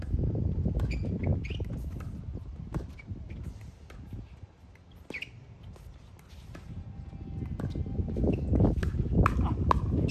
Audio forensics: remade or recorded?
recorded